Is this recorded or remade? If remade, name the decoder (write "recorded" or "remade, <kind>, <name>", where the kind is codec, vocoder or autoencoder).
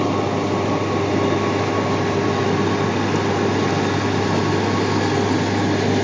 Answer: recorded